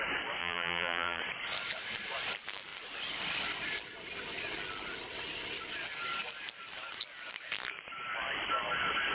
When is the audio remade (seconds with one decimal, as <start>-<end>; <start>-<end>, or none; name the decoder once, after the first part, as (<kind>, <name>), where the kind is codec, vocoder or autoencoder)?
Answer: 0.4-1.2 (vocoder, BigVGAN v2)